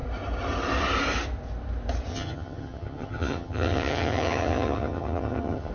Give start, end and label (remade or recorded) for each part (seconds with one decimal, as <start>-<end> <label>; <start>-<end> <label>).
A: 0.0-2.1 recorded; 2.1-5.7 remade